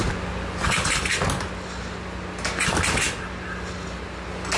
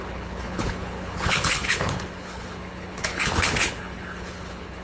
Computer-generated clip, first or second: second